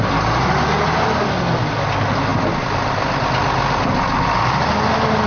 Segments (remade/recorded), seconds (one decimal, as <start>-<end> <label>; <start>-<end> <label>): 0.0-5.3 recorded